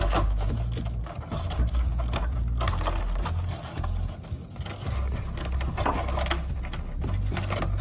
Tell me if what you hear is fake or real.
real